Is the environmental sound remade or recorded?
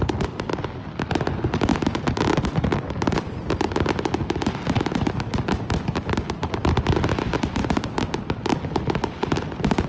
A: recorded